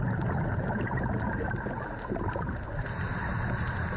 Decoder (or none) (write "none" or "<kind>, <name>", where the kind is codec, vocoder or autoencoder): none